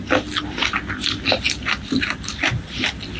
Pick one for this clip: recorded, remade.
recorded